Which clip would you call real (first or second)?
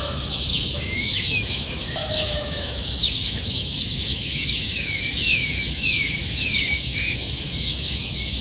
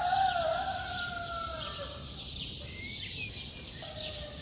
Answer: second